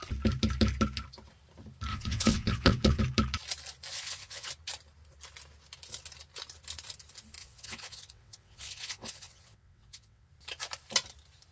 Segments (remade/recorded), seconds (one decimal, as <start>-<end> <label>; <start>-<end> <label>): 0.0-1.9 recorded; 1.9-3.0 remade; 3.0-3.9 recorded; 3.9-4.5 remade; 4.5-7.4 recorded; 7.4-10.3 remade; 10.3-11.5 recorded